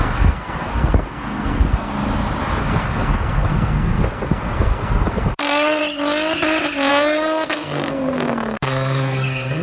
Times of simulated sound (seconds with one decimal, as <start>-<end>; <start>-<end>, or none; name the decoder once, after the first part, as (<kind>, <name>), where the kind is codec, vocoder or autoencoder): 0.0-1.9 (codec, SNAC); 2.6-5.8; 6.9-9.6